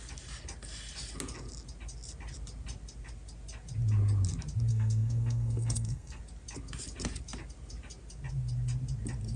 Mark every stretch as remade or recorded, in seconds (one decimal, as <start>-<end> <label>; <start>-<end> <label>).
0.0-4.7 recorded; 4.7-6.2 remade; 6.2-9.4 recorded